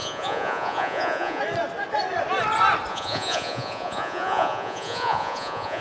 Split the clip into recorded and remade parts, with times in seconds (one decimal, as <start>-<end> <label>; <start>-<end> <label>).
0.0-1.4 remade; 1.4-2.9 recorded; 2.9-5.8 remade